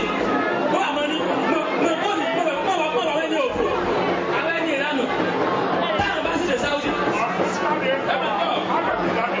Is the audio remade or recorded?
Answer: recorded